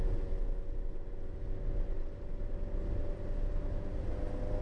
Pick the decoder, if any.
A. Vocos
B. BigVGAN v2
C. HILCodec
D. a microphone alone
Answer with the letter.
D